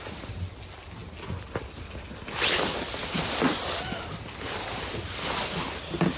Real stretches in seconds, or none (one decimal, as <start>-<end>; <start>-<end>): 0.0-6.2